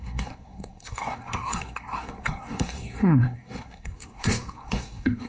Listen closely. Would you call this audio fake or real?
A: fake